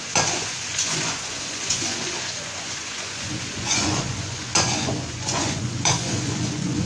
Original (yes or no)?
no